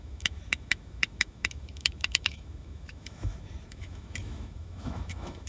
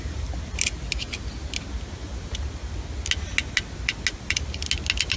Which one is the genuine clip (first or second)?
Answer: second